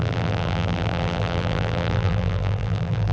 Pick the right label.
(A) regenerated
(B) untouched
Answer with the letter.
A